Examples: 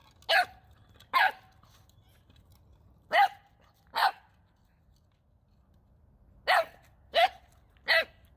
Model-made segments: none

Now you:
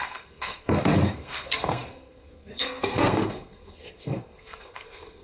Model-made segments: 0.0-5.2 (codec, SNAC)

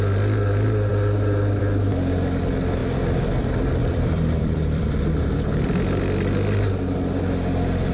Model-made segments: 2.8-3.3 (vocoder, BigVGAN v2); 3.8-5.0

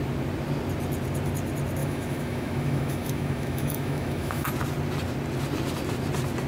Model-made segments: 1.8-4.5 (autoencoder, DAC-VAE)

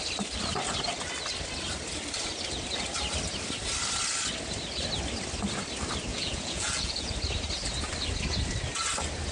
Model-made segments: 6.1-7.1 (vocoder, Vocos)

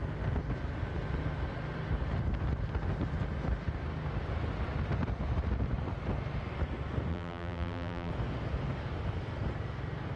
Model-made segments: 7.1-8.1 (vocoder, BigVGAN v2)